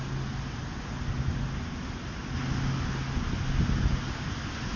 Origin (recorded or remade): recorded